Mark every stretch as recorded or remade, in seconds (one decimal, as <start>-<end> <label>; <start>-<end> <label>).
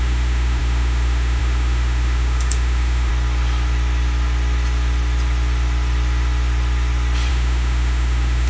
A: 0.0-3.1 remade; 3.1-7.3 recorded; 7.3-8.5 remade